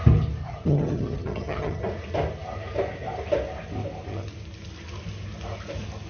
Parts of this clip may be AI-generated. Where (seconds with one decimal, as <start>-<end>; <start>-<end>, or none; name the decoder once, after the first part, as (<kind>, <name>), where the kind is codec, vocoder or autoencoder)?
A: 0.4-1.8 (vocoder, HiFi-GAN)